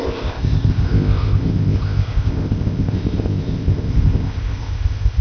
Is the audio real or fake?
fake